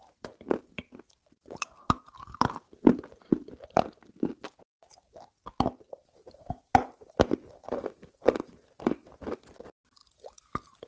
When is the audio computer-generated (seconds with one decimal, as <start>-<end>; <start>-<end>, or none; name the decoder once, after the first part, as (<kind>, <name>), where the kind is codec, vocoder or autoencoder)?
none